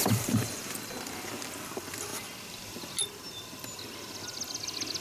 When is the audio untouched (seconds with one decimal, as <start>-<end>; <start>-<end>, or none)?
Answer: 0.0-5.0